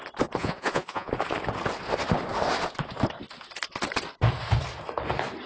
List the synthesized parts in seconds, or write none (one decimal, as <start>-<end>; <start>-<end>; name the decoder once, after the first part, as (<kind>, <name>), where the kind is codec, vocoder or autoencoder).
0.4-1.1 (vocoder, Vocos)